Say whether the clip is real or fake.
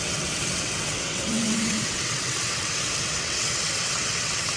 fake